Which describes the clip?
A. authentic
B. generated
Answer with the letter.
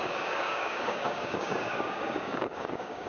B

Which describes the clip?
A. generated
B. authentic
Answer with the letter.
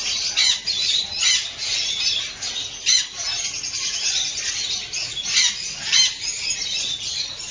B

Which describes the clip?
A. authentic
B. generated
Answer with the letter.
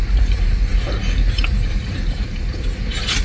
B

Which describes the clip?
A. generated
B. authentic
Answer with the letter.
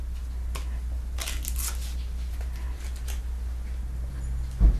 B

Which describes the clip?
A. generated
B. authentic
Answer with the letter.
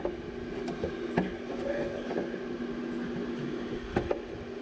B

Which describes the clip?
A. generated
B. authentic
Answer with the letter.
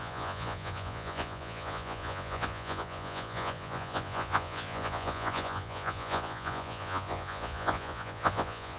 A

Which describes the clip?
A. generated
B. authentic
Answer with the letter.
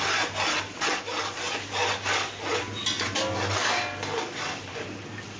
B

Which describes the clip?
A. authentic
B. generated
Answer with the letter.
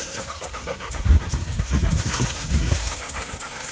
B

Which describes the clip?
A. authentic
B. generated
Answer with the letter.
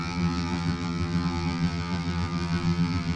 B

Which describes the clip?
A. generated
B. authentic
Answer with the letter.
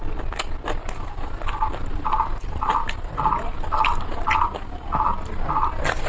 B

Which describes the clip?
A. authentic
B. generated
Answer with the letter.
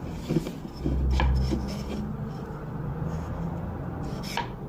A